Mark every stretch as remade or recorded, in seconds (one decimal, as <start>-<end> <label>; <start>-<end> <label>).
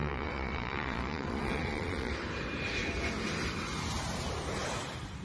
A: 0.0-2.1 remade; 2.1-5.2 recorded